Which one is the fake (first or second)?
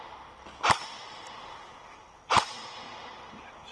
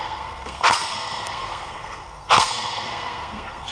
second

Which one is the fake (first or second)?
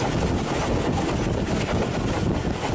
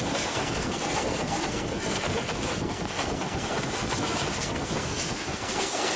second